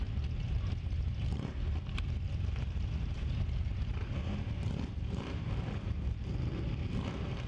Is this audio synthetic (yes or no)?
no